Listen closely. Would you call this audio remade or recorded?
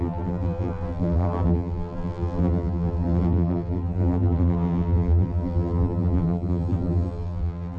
remade